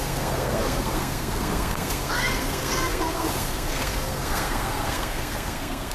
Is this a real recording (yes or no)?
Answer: no